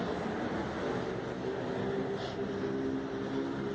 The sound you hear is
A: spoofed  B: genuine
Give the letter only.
B